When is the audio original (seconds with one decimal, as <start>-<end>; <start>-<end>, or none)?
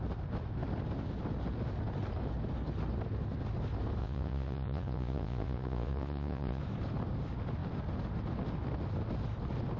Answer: 0.0-4.0; 6.6-9.8